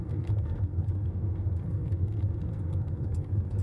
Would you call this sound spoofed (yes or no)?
yes